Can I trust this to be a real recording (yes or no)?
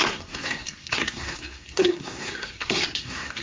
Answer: no